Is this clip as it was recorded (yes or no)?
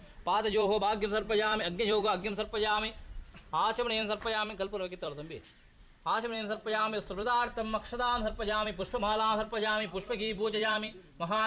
no